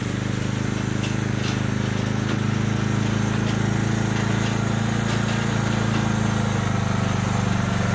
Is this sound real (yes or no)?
yes